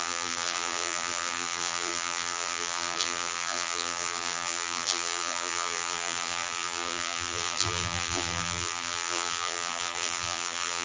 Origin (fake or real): fake